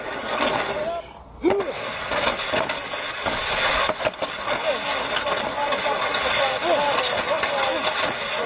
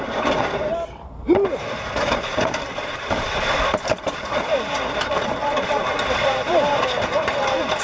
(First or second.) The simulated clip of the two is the second